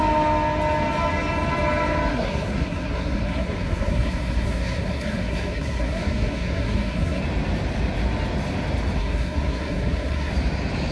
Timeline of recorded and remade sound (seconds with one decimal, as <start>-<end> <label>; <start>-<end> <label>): 0.0-2.1 recorded; 2.1-7.2 remade; 7.2-9.0 recorded; 9.0-10.3 remade; 10.3-10.9 recorded